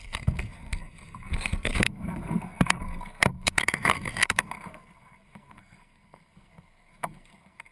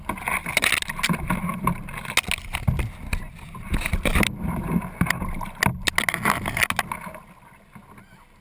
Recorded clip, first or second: second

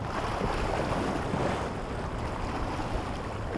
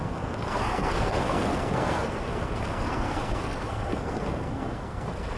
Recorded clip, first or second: first